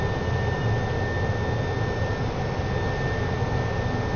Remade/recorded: recorded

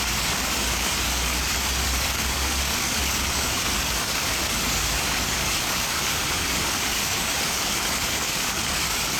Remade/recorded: remade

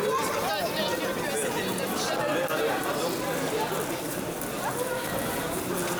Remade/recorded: recorded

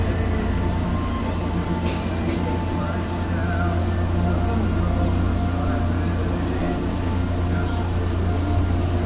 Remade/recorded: recorded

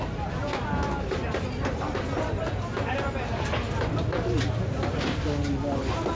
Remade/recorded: recorded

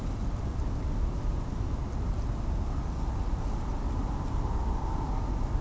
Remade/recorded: recorded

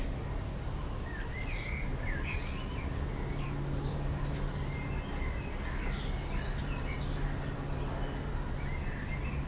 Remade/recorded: recorded